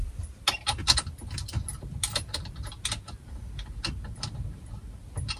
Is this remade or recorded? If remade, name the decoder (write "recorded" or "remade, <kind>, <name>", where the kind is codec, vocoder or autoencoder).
recorded